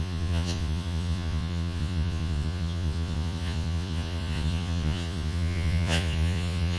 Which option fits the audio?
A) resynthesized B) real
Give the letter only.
A